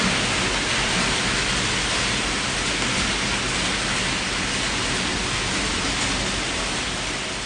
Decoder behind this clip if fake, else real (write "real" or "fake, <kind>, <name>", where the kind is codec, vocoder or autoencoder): real